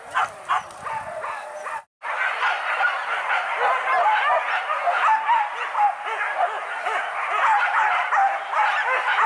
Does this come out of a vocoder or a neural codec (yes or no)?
no